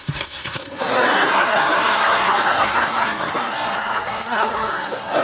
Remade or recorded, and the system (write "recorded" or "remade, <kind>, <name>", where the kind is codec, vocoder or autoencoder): remade, codec, SNAC